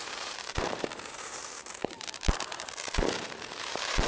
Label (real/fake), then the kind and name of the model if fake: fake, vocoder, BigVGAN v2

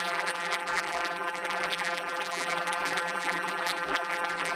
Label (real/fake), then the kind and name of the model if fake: fake, vocoder, BigVGAN v2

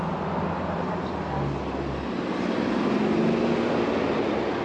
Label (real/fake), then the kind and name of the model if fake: real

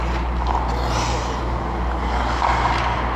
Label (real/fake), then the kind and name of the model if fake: real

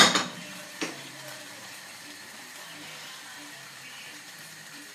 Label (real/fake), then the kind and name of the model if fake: fake, vocoder, BigVGAN v2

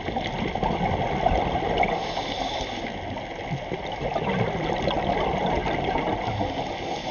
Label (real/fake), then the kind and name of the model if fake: real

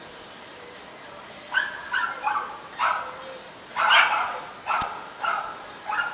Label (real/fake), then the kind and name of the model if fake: real